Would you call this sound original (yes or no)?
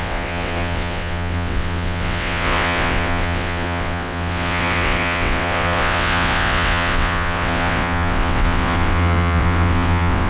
no